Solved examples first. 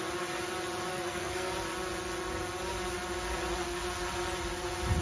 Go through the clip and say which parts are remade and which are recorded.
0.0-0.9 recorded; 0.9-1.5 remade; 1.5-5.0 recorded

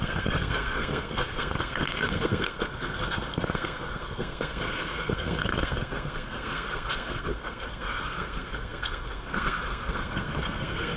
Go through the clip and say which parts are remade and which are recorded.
0.0-11.0 remade

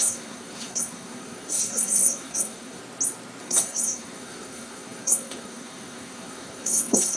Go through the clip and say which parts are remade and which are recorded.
0.0-2.8 remade; 2.8-3.4 recorded; 3.4-7.2 remade

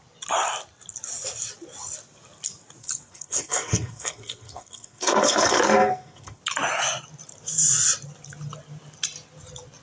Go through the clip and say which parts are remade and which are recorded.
0.0-2.8 recorded; 2.8-6.4 remade; 6.4-9.8 recorded

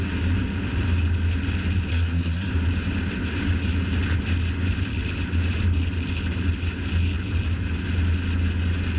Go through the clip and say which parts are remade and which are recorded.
0.0-1.9 recorded; 1.9-2.5 remade; 2.5-9.0 recorded

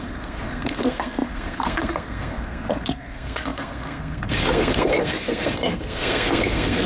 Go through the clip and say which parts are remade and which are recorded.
0.0-6.9 remade

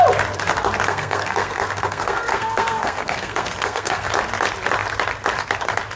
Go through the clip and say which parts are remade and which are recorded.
0.0-0.9 recorded; 0.9-4.1 remade; 4.1-6.0 recorded